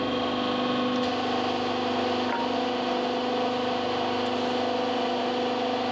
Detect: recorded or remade recorded